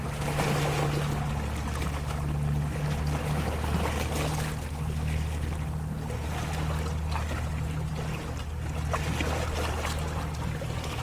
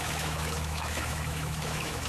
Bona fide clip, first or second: first